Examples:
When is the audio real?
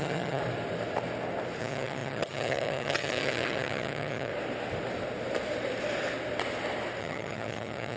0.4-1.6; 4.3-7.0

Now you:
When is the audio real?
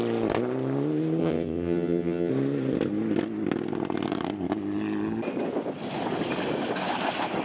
0.0-1.2; 2.3-7.4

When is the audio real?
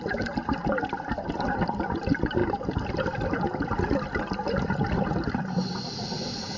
0.0-6.6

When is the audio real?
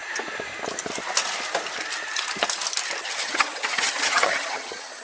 0.0-3.0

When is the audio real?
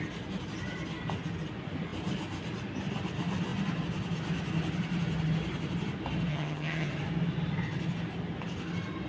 0.0-6.3; 6.9-9.1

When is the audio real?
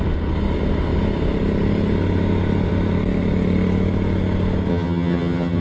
0.0-4.7